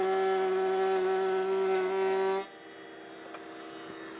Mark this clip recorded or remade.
recorded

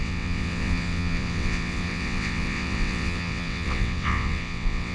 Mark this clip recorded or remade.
remade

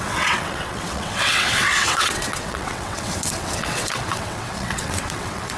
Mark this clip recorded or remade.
remade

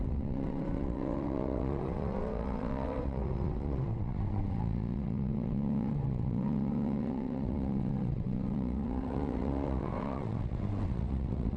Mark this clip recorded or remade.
remade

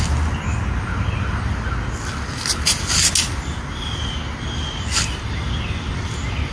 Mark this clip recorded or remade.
recorded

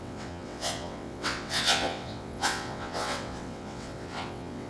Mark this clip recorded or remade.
remade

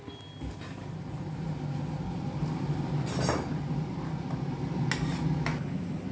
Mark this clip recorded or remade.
recorded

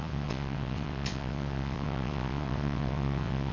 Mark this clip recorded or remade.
remade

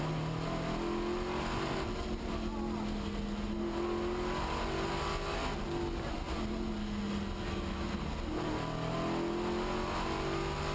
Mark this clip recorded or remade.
recorded